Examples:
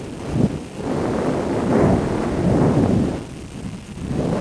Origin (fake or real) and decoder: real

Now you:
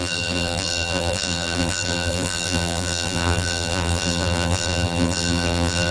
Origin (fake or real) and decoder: fake, vocoder, BigVGAN v2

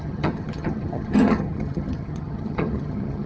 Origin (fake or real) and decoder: fake, vocoder, HiFi-GAN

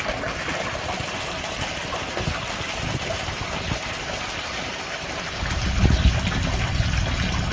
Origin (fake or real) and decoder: real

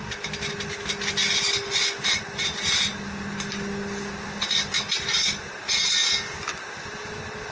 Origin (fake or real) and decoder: real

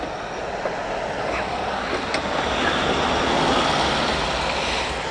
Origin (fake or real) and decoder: real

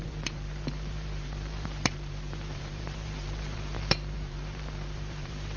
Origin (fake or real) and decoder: fake, vocoder, BigVGAN v2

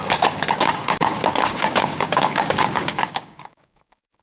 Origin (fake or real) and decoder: fake, codec, DAC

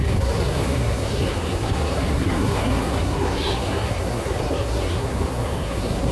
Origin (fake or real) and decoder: fake, codec, SNAC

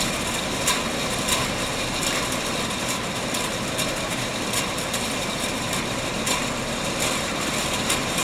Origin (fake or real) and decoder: fake, vocoder, BigVGAN v2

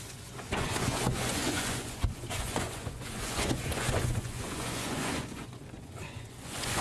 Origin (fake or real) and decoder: fake, vocoder, Vocos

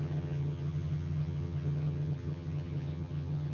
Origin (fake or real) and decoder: fake, vocoder, HiFi-GAN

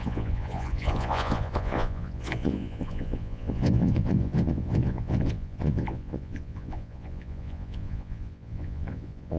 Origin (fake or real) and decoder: fake, vocoder, Vocos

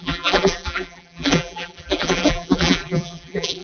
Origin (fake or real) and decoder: fake, vocoder, BigVGAN v2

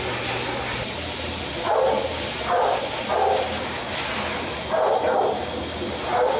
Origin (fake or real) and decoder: real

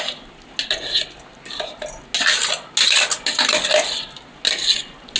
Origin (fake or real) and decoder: real